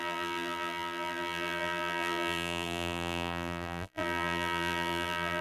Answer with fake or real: fake